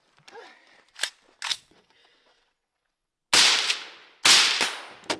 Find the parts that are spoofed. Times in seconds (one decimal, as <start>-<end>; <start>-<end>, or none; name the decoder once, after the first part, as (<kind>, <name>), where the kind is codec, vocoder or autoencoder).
1.5-3.1 (vocoder, WaveNeXt)